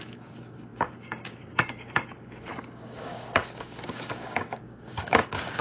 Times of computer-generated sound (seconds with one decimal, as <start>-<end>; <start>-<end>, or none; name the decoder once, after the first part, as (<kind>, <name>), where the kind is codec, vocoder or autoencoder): 0.0-5.6 (codec, DAC)